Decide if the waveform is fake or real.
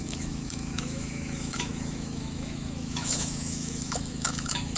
fake